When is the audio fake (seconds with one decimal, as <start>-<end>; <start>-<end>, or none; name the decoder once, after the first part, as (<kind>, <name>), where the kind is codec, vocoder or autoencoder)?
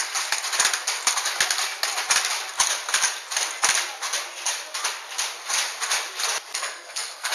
6.5-7.3 (codec, SNAC)